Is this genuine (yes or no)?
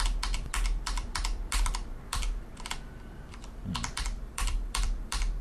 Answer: no